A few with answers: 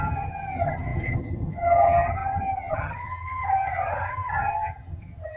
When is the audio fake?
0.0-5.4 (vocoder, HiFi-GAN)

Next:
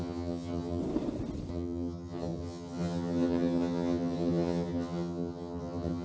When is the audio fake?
0.0-0.8 (vocoder, HiFi-GAN); 1.5-6.0

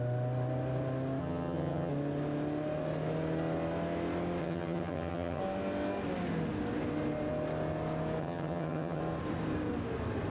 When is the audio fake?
1.2-1.9 (vocoder, HiFi-GAN); 4.4-5.4; 8.2-9.0

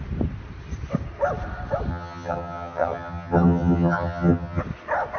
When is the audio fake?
1.9-4.6 (vocoder, HiFi-GAN)

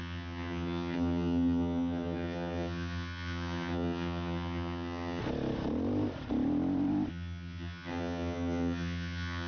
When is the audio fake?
0.0-5.2 (vocoder, HiFi-GAN); 7.1-9.5

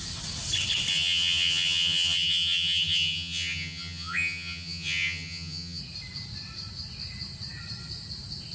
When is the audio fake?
0.9-5.8 (vocoder, HiFi-GAN)

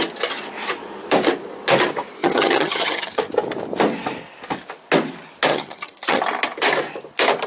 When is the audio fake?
2.2-3.2 (vocoder, HiFi-GAN); 5.5-6.2